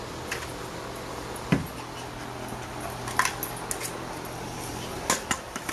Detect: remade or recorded recorded